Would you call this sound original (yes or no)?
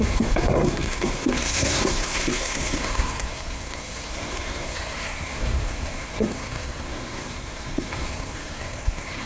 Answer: no